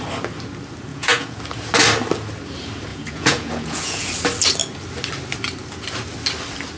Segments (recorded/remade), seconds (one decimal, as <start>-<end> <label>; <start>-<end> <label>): 0.0-0.9 recorded; 0.9-1.4 remade; 1.4-2.9 recorded; 2.9-4.1 remade; 4.1-6.8 recorded